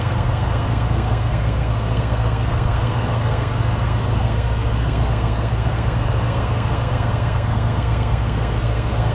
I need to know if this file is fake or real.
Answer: fake